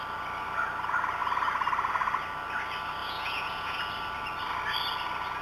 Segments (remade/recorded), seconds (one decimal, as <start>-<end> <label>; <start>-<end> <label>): 0.0-3.0 recorded; 3.0-3.8 remade; 3.8-5.4 recorded